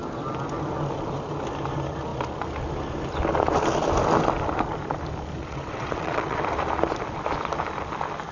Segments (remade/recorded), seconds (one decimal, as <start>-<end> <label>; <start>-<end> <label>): 0.0-5.4 recorded; 5.4-6.4 remade; 6.4-8.3 recorded